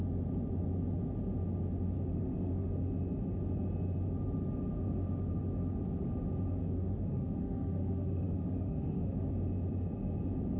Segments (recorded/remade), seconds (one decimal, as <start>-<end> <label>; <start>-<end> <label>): 0.0-2.1 recorded; 2.1-2.7 remade; 2.7-6.6 recorded; 6.6-9.3 remade; 9.3-10.6 recorded